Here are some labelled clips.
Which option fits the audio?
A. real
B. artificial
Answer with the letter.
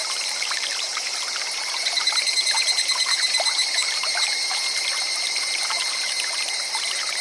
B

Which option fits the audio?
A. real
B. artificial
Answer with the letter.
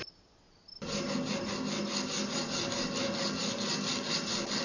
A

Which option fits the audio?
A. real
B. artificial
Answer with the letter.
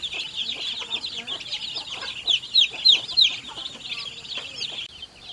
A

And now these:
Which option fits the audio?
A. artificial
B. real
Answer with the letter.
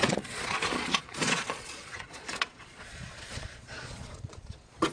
A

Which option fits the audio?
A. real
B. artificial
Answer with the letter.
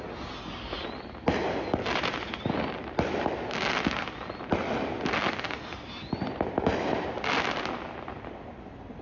A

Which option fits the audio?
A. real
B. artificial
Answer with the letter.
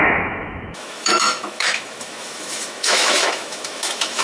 B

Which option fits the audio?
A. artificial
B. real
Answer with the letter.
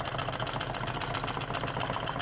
B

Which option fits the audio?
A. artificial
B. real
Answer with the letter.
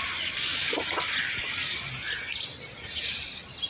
B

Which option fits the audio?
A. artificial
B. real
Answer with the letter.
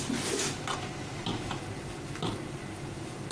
B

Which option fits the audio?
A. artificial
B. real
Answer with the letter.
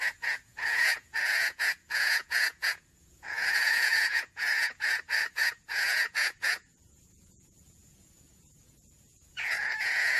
A